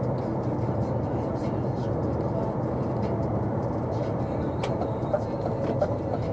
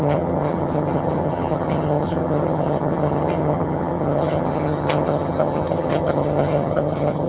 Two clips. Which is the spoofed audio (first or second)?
second